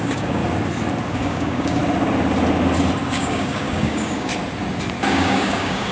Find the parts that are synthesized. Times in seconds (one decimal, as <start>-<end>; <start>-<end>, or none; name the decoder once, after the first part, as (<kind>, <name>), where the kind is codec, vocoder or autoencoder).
0.0-0.4 (codec, DAC); 1.1-1.8; 3.1-4.3; 5.1-5.9

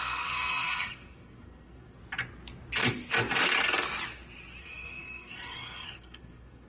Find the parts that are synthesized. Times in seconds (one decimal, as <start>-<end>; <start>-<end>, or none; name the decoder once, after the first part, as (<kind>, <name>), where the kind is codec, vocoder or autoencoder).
0.0-2.0 (codec, SNAC); 4.6-6.7

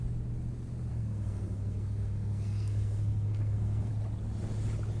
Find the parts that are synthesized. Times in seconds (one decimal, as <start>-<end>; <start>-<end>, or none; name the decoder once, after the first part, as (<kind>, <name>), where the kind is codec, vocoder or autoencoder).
0.9-3.9 (codec, SNAC)

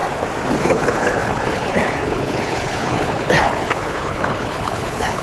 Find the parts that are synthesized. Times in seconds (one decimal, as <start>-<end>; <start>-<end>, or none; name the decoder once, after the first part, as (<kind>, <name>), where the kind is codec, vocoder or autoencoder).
0.6-5.2 (codec, HILCodec)

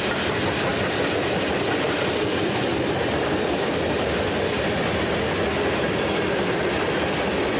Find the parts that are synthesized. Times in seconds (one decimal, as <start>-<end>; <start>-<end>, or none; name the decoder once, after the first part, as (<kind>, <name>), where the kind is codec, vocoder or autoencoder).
0.0-0.7 (vocoder, BigVGAN v2); 2.7-7.6

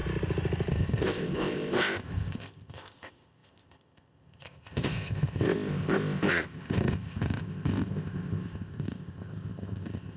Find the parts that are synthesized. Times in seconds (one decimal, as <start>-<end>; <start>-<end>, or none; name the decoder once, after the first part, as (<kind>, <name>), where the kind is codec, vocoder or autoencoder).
0.7-10.2 (codec, ZipCodec)